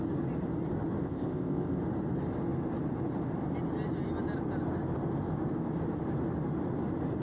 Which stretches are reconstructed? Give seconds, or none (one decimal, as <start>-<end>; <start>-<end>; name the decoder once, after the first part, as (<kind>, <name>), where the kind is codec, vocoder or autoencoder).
1.0-1.8 (codec, ZipCodec)